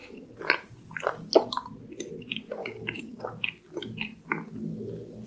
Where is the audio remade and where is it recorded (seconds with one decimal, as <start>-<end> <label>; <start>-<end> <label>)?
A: 0.0-2.6 recorded; 2.6-3.2 remade; 3.2-5.3 recorded